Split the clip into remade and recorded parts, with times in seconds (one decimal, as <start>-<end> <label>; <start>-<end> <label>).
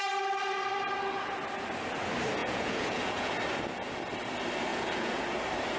0.0-2.4 recorded; 2.4-3.3 remade; 3.3-4.7 recorded; 4.7-5.2 remade; 5.2-5.8 recorded